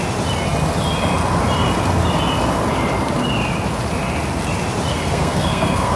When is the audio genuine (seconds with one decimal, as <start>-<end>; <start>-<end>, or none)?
0.0-4.9